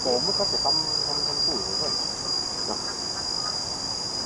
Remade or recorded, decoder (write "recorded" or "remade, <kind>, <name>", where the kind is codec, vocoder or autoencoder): recorded